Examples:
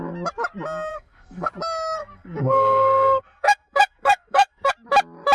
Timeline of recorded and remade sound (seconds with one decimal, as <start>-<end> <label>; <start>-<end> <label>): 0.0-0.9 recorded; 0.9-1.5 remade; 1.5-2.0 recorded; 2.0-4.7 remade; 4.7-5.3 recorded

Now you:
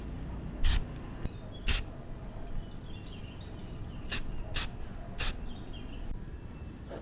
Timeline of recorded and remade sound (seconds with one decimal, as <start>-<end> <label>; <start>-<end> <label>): 0.0-7.0 recorded

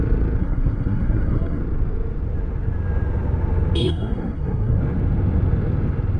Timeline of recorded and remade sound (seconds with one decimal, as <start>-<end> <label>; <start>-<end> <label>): 0.0-0.4 recorded; 0.4-1.6 remade; 1.6-3.8 recorded; 3.8-4.8 remade; 4.8-6.2 recorded